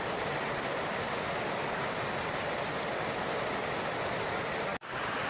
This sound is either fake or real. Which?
real